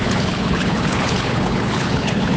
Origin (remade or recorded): remade